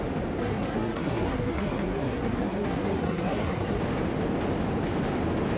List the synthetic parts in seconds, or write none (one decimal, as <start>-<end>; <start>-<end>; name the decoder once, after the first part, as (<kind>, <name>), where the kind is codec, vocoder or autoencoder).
0.4-3.8 (codec, SNAC)